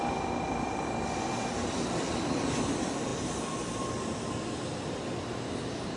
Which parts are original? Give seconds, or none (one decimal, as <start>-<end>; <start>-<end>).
0.0-6.0